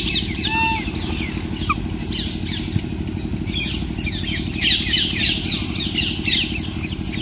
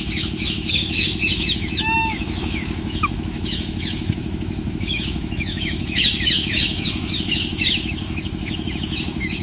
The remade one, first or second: second